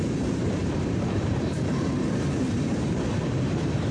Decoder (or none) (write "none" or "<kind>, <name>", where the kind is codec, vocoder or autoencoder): vocoder, BigVGAN v2